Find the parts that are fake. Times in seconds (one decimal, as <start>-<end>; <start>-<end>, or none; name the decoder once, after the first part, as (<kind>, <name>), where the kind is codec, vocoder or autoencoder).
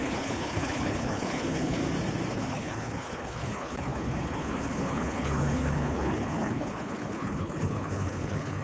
0.0-1.8 (codec, HILCodec); 2.3-8.6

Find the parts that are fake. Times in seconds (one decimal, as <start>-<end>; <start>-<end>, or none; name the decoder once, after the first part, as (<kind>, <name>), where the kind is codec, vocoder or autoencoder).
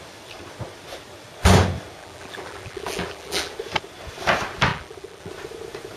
2.0-3.5 (vocoder, BigVGAN v2); 4.7-5.3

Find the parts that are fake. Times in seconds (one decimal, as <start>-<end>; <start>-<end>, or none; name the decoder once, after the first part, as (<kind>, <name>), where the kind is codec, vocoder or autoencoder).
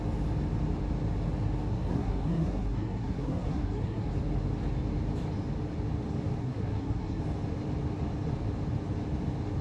1.7-4.1 (codec, SNAC); 6.4-7.2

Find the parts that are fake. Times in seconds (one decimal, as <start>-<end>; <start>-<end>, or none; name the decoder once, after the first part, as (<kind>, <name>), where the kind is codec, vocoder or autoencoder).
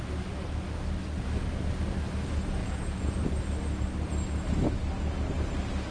2.6-3.1 (vocoder, Vocos)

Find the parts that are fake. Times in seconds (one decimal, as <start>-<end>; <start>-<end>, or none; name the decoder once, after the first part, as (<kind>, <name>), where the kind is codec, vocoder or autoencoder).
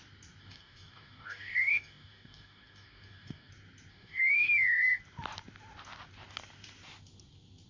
0.4-3.5 (codec, DAC); 3.9-5.0